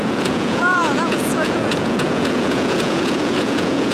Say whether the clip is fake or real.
fake